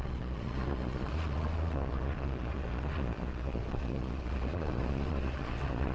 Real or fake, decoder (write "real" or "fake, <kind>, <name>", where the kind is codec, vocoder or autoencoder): fake, vocoder, Vocos